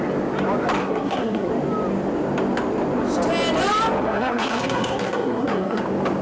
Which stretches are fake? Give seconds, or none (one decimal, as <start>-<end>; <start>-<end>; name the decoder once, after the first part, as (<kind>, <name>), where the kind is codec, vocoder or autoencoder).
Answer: 0.8-1.5 (codec, SNAC); 4.0-5.8